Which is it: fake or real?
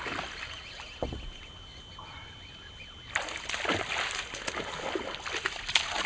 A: real